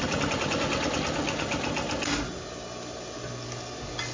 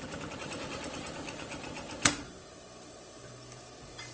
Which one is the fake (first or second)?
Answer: second